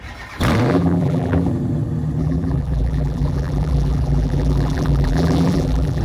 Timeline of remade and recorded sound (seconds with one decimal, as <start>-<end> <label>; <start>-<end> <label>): 0.0-0.7 recorded; 0.7-1.5 remade; 1.5-2.2 recorded; 2.2-6.0 remade